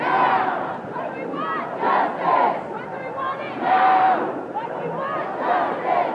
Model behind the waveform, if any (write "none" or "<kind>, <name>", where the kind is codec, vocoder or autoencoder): none